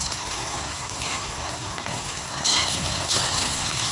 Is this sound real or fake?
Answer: fake